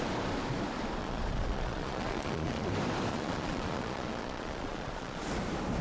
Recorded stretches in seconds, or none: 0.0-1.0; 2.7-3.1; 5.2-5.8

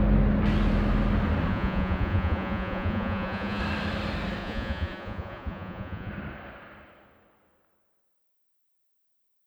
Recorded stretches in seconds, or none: 0.0-1.5; 3.6-4.4; 6.1-9.5